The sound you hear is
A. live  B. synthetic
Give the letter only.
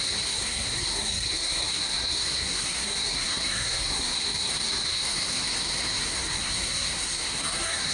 B